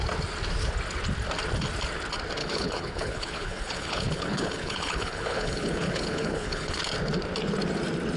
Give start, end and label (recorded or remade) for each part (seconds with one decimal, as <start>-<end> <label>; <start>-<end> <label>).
0.0-2.4 recorded; 2.4-6.8 remade; 6.8-8.2 recorded